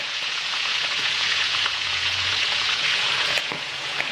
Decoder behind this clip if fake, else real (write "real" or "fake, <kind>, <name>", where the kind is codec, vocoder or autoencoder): fake, vocoder, Vocos